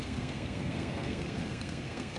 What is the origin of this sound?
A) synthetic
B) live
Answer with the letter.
A